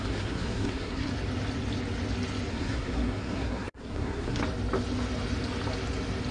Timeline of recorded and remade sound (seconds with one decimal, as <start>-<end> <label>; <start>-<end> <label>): 0.0-1.1 remade; 1.1-2.5 recorded; 2.5-4.4 remade; 4.4-6.3 recorded